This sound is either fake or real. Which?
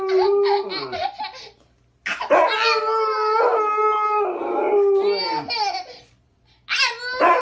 real